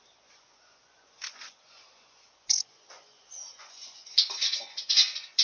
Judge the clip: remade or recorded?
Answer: remade